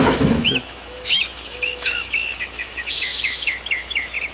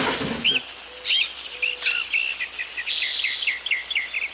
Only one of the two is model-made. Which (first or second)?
first